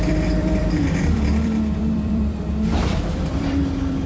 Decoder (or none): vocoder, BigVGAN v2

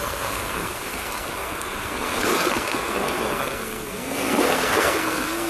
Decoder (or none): codec, SNAC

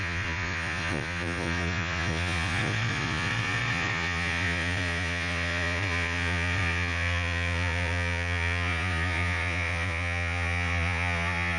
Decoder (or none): vocoder, Vocos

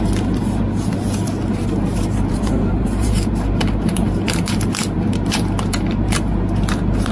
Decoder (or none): vocoder, BigVGAN v2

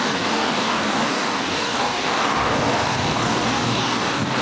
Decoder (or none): codec, DAC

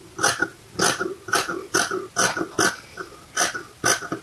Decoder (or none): none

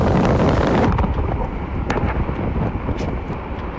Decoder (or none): vocoder, BigVGAN v2